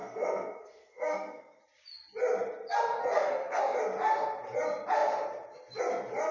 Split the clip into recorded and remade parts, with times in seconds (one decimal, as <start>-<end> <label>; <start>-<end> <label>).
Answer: 0.0-1.6 remade; 1.6-3.0 recorded; 3.0-3.6 remade; 3.6-6.3 recorded